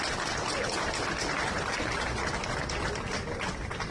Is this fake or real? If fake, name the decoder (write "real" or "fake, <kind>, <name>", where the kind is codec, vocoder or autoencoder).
real